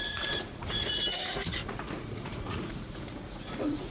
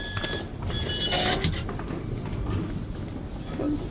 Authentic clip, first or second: second